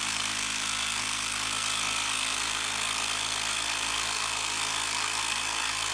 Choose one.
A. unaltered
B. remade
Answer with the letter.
B